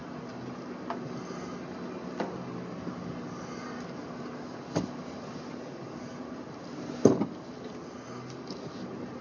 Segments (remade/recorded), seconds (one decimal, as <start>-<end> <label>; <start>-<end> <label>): 0.0-9.2 recorded